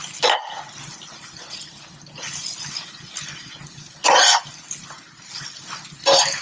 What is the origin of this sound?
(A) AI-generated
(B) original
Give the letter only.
B